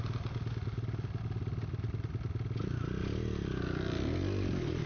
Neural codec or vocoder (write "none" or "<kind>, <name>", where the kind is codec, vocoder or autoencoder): none